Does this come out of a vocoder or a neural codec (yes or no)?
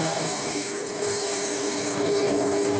yes